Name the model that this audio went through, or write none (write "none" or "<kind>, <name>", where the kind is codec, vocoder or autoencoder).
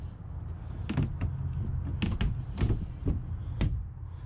none